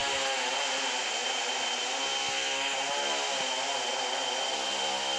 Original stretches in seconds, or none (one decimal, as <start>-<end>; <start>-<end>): 0.0-5.2

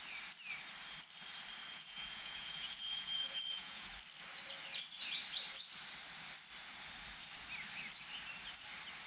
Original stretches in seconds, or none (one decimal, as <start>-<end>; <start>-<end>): 0.0-1.7; 3.9-9.1

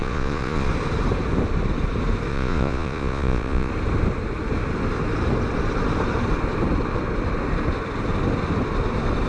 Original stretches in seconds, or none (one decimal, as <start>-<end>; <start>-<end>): 0.7-2.3; 3.7-9.3

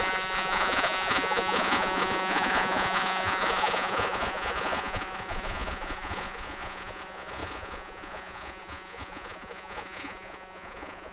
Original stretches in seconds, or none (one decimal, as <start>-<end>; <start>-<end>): none

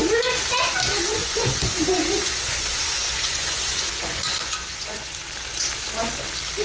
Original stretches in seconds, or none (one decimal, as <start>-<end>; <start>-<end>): 0.0-1.2; 5.2-6.6

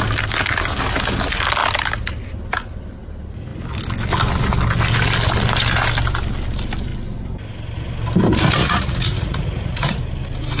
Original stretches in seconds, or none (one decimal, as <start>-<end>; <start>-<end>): 0.0-8.6; 10.0-10.6